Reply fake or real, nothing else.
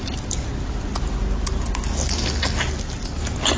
real